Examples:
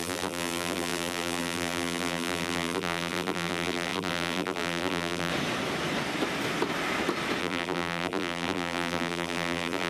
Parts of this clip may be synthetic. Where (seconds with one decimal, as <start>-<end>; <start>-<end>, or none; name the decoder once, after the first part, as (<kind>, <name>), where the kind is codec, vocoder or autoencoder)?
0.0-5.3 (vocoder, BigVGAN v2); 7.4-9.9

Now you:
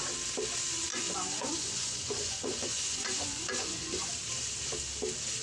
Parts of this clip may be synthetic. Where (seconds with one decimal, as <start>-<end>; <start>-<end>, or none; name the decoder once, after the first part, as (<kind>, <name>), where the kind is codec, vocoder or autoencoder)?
0.9-4.1 (vocoder, Vocos)

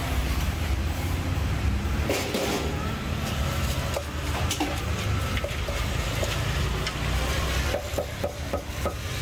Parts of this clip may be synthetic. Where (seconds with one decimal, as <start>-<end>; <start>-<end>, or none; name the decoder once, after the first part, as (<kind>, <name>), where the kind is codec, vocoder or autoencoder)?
none